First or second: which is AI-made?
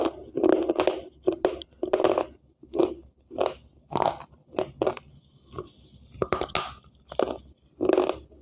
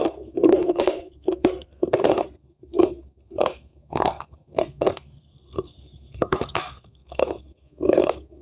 second